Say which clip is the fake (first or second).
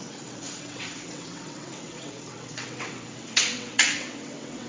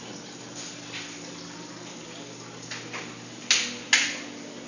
first